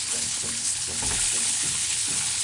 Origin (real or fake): fake